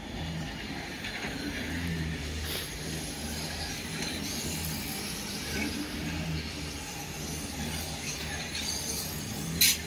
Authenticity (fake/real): real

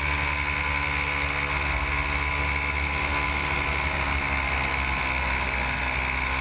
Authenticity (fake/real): real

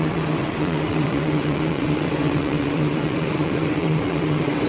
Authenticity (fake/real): fake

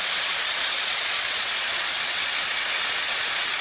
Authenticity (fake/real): fake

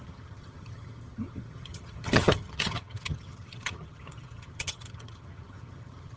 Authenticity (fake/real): fake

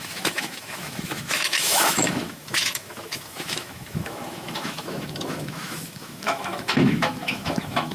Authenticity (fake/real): fake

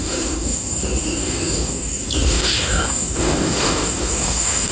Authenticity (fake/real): fake